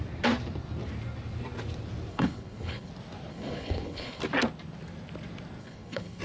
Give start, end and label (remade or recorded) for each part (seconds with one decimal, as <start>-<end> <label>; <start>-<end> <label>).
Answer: 0.0-2.1 recorded; 2.1-2.9 remade; 2.9-3.3 recorded; 3.3-4.2 remade; 4.2-5.6 recorded; 5.6-6.2 remade